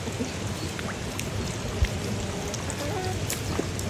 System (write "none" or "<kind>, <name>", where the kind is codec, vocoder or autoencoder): none